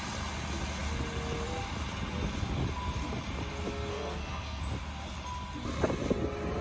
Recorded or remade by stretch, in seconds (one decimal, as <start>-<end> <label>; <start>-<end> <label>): 0.0-3.9 recorded; 3.9-4.6 remade; 4.6-6.6 recorded